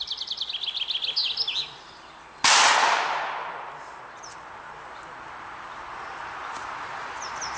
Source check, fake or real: real